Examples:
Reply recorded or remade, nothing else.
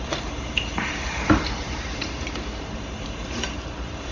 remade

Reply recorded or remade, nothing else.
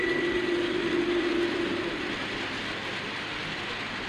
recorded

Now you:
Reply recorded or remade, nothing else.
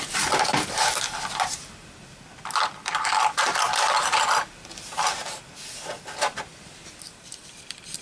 recorded